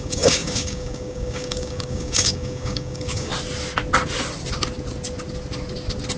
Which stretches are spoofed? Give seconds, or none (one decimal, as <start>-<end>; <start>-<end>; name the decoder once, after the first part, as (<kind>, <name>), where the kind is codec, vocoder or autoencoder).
0.0-3.3 (codec, DAC)